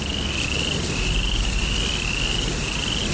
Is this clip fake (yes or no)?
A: no